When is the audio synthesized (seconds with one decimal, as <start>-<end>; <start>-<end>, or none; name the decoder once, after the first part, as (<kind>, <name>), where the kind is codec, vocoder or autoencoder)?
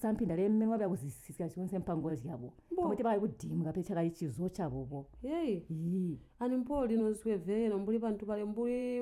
0.0-2.1 (vocoder, BigVGAN v2); 7.0-9.0